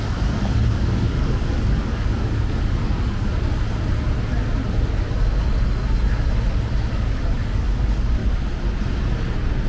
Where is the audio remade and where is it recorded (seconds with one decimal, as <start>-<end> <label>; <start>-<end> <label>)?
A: 0.0-3.3 remade; 3.3-6.9 recorded; 6.9-8.2 remade; 8.2-9.7 recorded